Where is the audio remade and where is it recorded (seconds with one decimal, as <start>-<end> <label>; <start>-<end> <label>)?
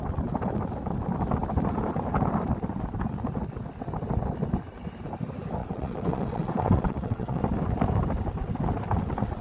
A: 0.0-5.6 recorded; 5.6-7.4 remade; 7.4-9.4 recorded